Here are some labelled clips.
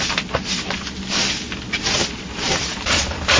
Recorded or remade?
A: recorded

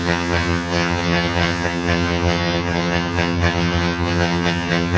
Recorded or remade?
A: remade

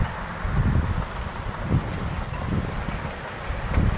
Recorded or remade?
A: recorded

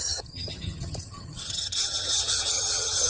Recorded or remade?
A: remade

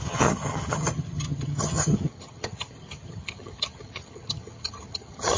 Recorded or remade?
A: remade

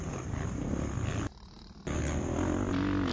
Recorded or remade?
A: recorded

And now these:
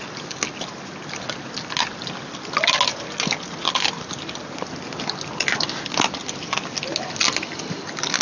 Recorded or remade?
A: recorded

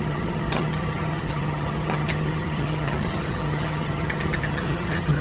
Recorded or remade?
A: remade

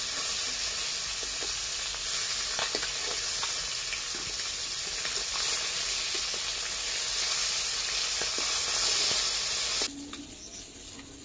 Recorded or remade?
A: recorded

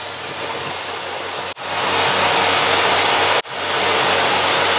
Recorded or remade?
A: recorded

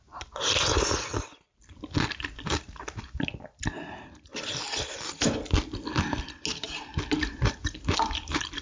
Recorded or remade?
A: recorded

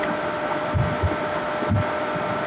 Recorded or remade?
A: recorded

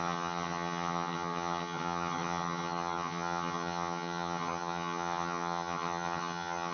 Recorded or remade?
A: remade